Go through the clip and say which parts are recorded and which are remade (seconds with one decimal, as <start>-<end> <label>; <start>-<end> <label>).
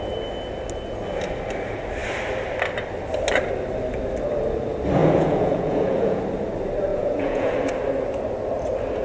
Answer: 0.0-5.0 recorded; 5.0-6.2 remade; 6.2-6.9 recorded; 6.9-7.5 remade; 7.5-9.0 recorded